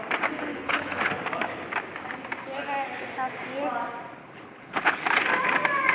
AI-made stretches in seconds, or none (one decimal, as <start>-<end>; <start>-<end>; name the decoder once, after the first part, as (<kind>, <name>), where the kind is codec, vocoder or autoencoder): 0.5-1.0 (codec, HILCodec); 4.2-5.0